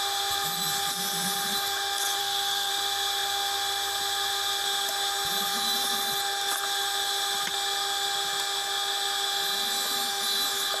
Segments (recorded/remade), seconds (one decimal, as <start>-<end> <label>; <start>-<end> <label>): 0.0-2.2 recorded; 2.2-2.7 remade; 2.7-10.8 recorded